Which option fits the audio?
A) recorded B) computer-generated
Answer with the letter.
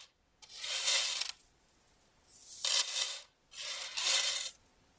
A